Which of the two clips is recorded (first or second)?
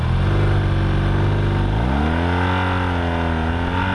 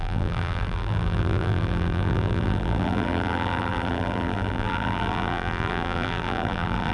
first